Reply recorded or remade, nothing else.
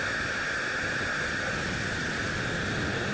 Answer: recorded